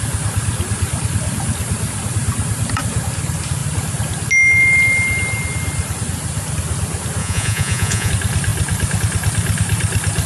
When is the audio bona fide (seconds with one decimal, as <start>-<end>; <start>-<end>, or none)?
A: 0.0-7.2; 8.1-10.3